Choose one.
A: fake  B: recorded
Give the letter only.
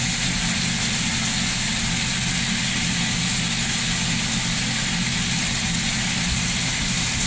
B